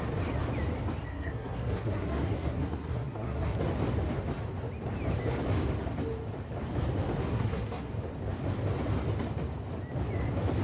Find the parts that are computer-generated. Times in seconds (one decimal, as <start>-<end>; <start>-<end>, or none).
1.1-3.7; 7.3-7.9

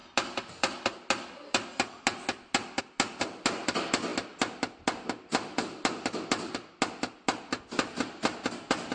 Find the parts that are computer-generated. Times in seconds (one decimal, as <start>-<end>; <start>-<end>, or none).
none

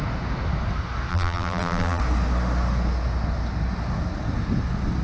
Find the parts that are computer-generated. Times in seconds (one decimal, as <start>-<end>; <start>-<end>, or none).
1.1-2.0

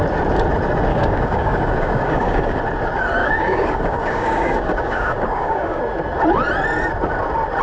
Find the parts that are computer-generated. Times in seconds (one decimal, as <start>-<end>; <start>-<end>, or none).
0.9-2.6; 3.2-5.8